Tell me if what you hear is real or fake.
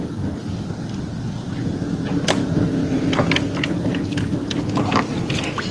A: real